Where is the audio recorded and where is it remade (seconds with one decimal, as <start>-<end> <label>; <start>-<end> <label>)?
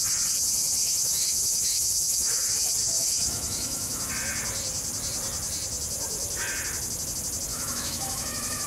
0.0-0.8 recorded; 0.8-2.4 remade; 2.4-2.8 recorded; 2.8-4.1 remade; 4.1-7.5 recorded; 7.5-8.7 remade